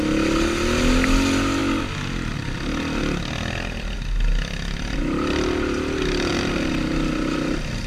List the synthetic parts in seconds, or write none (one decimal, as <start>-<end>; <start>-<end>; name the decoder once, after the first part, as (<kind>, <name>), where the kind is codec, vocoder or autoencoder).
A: none